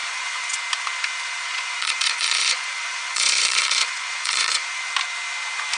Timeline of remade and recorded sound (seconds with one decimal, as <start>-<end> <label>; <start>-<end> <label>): 0.0-0.6 remade; 0.6-1.5 recorded; 1.5-4.8 remade; 4.8-5.8 recorded